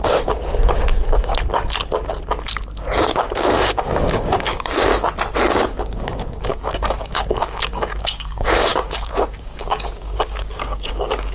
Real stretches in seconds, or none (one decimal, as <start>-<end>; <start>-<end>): 1.3-3.0; 4.9-5.5